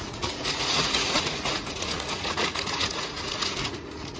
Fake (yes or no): yes